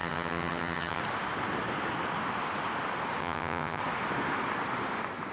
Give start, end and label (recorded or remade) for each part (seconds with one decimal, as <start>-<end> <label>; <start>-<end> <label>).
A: 0.0-1.0 remade; 1.0-3.2 recorded; 3.2-3.8 remade; 3.8-5.3 recorded